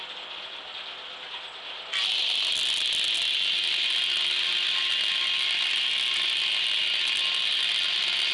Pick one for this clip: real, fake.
real